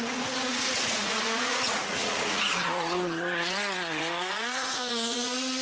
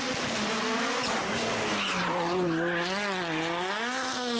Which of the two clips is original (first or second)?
second